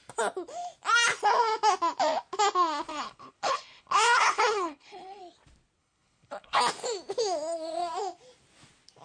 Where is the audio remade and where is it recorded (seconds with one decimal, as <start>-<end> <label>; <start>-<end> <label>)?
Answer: 0.0-2.9 recorded; 2.9-5.2 remade; 5.2-5.8 recorded; 5.8-6.6 remade; 6.6-9.0 recorded